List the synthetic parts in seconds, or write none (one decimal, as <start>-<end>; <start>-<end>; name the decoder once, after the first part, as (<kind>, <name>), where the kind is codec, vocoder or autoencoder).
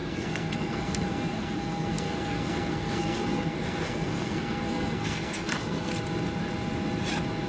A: 0.0-5.9 (codec, SNAC)